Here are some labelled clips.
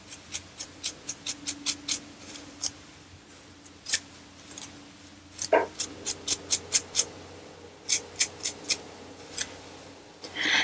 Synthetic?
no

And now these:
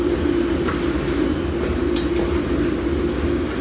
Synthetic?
no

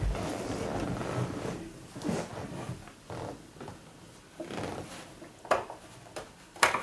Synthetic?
no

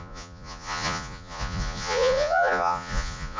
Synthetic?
yes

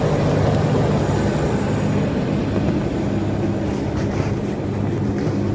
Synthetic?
no